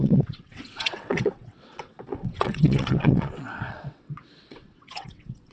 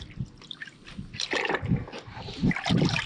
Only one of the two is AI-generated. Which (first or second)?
first